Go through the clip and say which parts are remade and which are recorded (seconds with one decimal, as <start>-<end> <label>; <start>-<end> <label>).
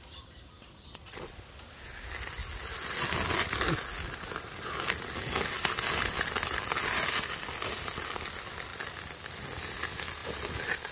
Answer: 0.0-10.9 recorded